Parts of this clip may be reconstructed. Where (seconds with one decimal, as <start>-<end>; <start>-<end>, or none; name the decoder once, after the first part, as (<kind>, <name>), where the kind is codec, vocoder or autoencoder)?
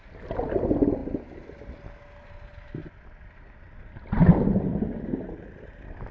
4.2-5.4 (vocoder, BigVGAN v2)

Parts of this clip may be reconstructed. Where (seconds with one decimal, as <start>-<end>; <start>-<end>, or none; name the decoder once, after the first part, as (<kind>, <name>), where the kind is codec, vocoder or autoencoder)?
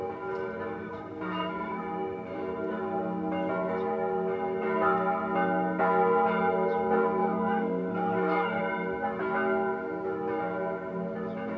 0.8-1.8 (codec, SNAC); 7.2-8.6